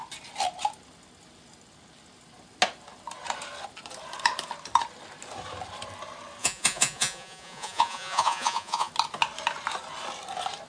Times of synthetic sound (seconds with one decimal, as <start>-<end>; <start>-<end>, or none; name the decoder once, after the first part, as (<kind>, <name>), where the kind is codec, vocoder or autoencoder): 6.4-8.9 (vocoder, Vocos)